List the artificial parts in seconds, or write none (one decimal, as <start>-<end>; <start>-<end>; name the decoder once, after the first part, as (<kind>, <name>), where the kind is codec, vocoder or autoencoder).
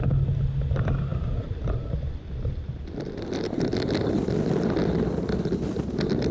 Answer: none